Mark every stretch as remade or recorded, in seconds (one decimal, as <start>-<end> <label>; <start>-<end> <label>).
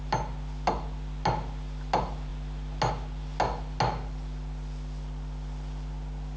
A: 0.0-6.4 recorded